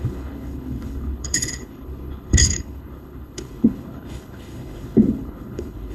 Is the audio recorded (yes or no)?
no